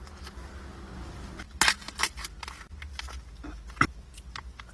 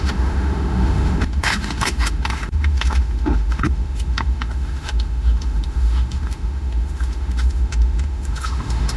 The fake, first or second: second